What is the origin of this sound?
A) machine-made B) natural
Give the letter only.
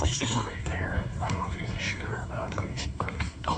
A